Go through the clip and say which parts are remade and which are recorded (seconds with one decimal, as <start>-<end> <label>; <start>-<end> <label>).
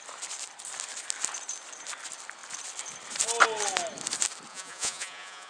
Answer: 0.0-4.5 recorded; 4.5-5.5 remade